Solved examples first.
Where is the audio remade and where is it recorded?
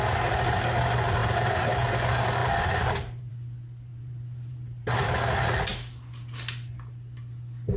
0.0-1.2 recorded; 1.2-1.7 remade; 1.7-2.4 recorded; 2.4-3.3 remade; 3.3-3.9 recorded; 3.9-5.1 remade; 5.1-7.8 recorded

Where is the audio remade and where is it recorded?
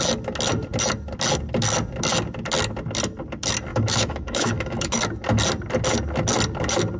0.0-3.7 recorded; 3.7-5.0 remade; 5.0-7.0 recorded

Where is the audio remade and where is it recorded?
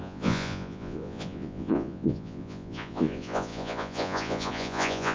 0.0-5.1 remade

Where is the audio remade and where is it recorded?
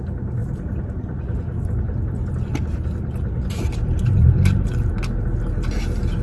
0.0-6.2 recorded